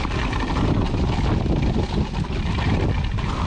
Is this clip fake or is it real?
real